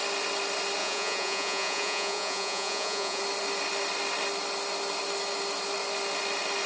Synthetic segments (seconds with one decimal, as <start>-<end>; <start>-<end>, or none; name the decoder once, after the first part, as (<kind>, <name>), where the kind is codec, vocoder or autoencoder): 0.8-3.2 (vocoder, Vocos)